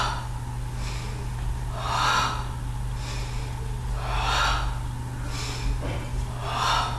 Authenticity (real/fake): real